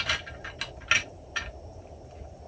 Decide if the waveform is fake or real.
real